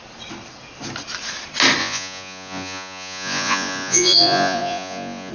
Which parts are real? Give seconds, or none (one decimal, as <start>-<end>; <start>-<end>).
0.0-1.8